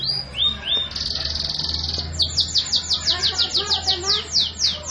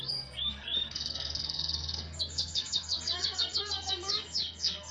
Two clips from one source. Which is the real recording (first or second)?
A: first